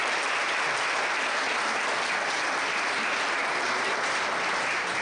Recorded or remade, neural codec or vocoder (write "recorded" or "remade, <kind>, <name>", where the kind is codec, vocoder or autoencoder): recorded